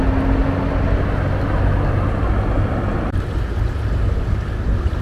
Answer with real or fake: real